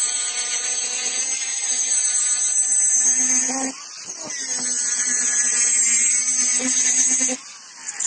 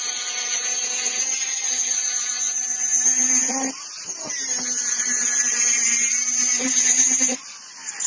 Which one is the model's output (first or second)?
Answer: second